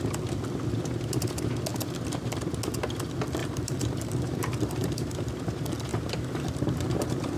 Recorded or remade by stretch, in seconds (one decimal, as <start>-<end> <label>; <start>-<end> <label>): 0.0-3.4 recorded; 3.4-5.3 remade; 5.3-5.9 recorded; 5.9-7.4 remade